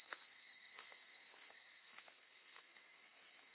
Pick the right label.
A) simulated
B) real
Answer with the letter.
A